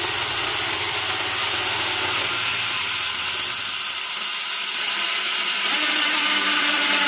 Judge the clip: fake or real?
fake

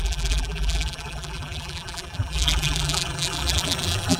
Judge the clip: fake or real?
fake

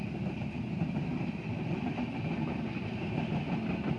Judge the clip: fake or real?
real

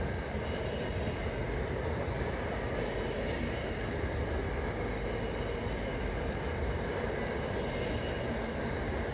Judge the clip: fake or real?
real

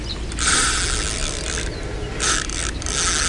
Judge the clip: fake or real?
real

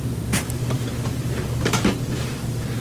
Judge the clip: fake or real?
fake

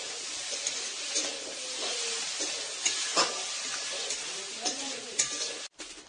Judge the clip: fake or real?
real